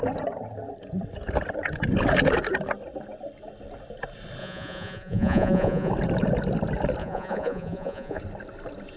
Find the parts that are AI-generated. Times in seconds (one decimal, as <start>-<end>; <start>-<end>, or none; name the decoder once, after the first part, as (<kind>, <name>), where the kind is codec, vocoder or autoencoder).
4.4-5.9 (vocoder, Vocos); 7.0-8.2